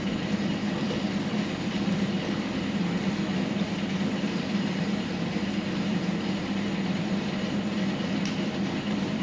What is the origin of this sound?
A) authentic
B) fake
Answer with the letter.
B